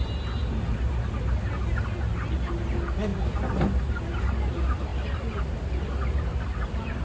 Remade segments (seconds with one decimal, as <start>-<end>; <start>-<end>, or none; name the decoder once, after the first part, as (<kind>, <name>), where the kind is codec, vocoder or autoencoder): 4.9-7.0 (vocoder, BigVGAN v2)